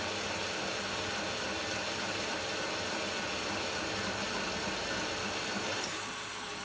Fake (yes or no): yes